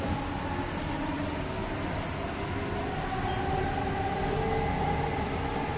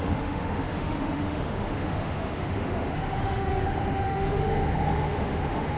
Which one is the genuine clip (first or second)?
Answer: first